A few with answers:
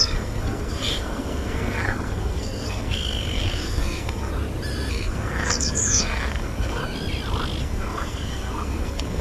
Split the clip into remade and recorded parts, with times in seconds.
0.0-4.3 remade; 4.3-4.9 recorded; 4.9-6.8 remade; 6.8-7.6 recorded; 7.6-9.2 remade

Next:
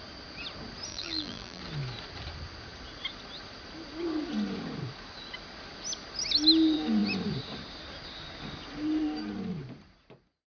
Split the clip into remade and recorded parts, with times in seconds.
0.0-0.9 recorded; 0.9-1.6 remade; 1.6-10.5 recorded

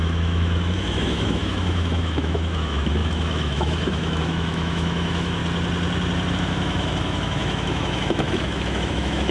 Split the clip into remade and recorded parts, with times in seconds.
0.0-5.4 remade; 5.4-6.3 recorded; 6.3-9.3 remade

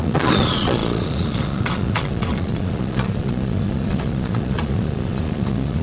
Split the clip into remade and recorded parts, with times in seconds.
0.0-5.8 remade

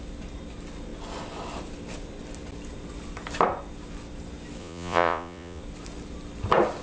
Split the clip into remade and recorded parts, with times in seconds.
0.0-4.6 recorded; 4.6-5.6 remade; 5.6-6.8 recorded

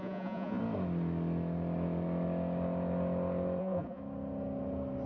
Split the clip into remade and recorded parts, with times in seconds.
0.0-0.6 remade; 0.6-3.6 recorded; 3.6-4.0 remade; 4.0-5.1 recorded

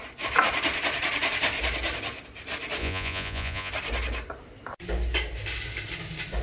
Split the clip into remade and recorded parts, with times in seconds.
0.0-2.8 recorded; 2.8-3.7 remade; 3.7-6.4 recorded